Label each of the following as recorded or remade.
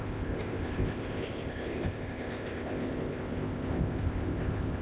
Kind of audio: remade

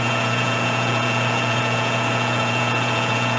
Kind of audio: remade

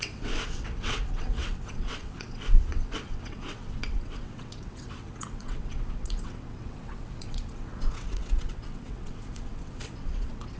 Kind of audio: remade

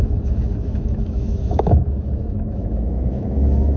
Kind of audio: remade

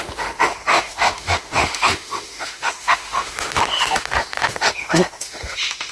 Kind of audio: remade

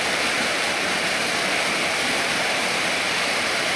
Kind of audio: remade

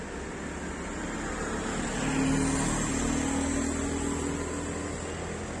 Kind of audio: recorded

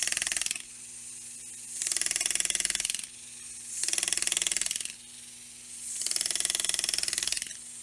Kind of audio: recorded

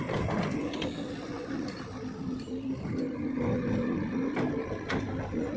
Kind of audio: recorded